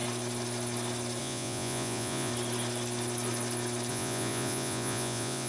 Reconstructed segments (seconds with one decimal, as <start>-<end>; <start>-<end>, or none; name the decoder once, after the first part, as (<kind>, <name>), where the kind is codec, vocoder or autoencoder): 1.2-2.3 (vocoder, Vocos); 3.9-5.5